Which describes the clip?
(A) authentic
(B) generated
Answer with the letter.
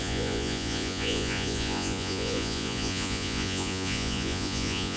B